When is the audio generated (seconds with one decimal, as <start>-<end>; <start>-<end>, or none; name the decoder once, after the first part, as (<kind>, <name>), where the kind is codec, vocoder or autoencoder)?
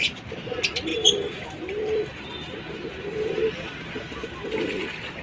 0.9-2.2 (vocoder, BigVGAN v2)